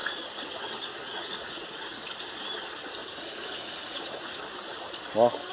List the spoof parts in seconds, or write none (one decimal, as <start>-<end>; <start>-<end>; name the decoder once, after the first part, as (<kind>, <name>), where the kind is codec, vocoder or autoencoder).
0.0-0.6 (vocoder, Vocos); 1.1-1.9; 3.0-4.4